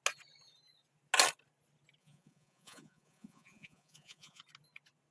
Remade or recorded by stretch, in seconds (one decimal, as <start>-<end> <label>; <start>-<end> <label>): 0.0-2.0 recorded; 2.0-4.4 remade; 4.4-5.1 recorded